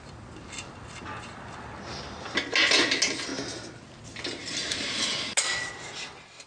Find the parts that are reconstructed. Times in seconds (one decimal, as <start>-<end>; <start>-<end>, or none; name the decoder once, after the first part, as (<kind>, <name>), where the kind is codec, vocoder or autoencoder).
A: none